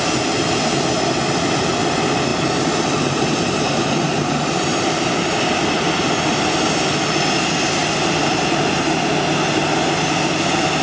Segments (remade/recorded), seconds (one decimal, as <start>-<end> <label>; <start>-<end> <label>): 0.0-2.3 recorded; 2.3-5.1 remade; 5.1-7.8 recorded; 7.8-9.1 remade; 9.1-10.8 recorded